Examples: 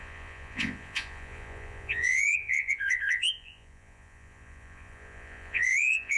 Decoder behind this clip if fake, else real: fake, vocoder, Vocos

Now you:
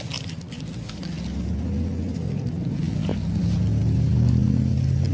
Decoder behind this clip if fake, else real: real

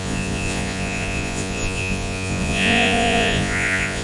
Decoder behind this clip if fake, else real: fake, vocoder, Vocos